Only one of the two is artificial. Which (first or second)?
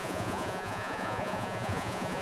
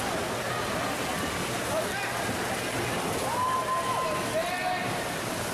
first